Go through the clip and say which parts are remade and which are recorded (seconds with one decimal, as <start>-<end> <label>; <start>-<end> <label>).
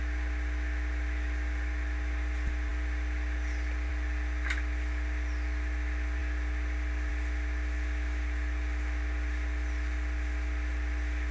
0.0-11.3 recorded